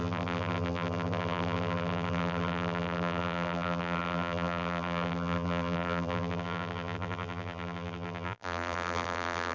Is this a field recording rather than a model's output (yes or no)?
no